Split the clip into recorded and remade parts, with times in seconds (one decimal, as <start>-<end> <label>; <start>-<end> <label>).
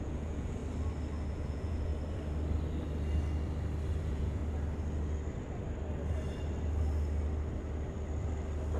0.0-0.6 remade; 0.6-1.3 recorded; 1.3-1.9 remade; 1.9-4.0 recorded; 4.0-4.4 remade; 4.4-8.8 recorded